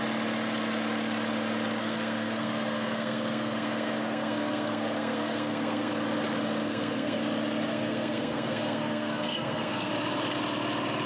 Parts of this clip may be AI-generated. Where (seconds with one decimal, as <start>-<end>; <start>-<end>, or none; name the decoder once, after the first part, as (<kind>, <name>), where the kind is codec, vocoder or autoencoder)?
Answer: 1.8-5.9 (codec, SNAC); 6.6-7.2; 7.7-9.9